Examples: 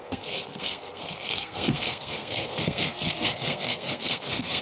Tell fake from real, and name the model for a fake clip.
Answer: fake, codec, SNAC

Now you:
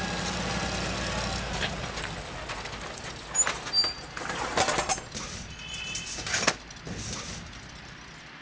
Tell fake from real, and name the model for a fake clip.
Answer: real